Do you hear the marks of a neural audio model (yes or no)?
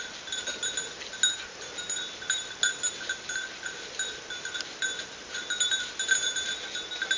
no